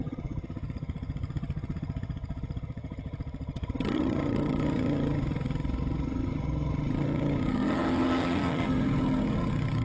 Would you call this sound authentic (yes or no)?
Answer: no